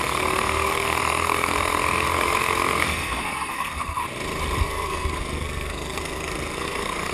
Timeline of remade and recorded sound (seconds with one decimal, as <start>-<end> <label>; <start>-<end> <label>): 0.0-4.0 remade; 4.0-4.6 recorded; 4.6-7.1 remade